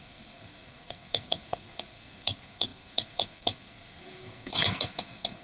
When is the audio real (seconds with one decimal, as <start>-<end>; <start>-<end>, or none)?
none